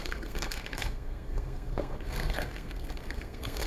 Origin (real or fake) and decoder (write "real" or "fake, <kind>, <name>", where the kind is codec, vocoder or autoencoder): fake, codec, SNAC